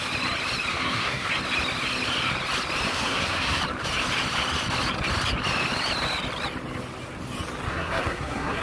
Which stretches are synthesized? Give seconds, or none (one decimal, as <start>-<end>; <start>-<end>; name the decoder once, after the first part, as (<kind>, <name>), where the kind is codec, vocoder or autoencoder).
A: 0.7-1.3 (codec, SNAC); 2.9-3.6; 7.7-8.6